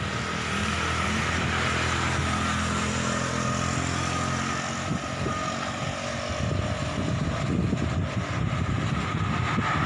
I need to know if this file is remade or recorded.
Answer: recorded